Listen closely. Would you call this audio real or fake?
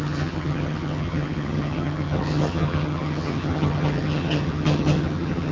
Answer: fake